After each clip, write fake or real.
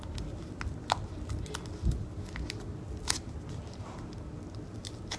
real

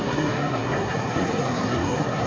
fake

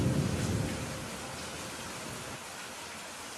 real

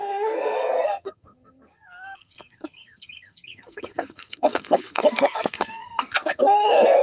fake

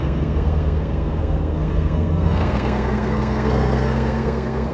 fake